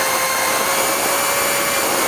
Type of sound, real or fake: real